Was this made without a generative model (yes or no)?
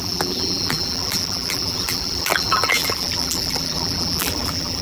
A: no